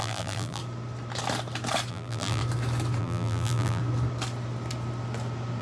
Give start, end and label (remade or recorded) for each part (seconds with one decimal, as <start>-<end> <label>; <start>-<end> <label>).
0.0-0.6 remade; 0.6-1.9 recorded; 1.9-2.4 remade; 2.4-3.0 recorded; 3.0-3.8 remade; 3.8-5.6 recorded